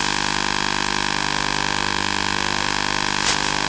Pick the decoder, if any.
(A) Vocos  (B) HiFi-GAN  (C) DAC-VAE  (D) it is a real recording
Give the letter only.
D